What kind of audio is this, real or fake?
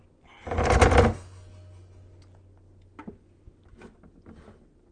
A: real